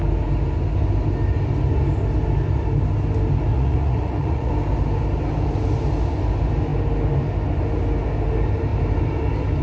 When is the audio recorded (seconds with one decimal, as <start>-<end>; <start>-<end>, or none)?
0.0-3.5; 4.5-9.6